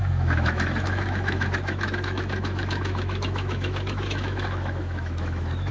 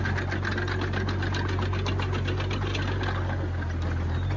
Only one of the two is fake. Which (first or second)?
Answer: first